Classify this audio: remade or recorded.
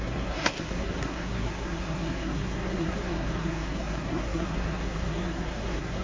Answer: remade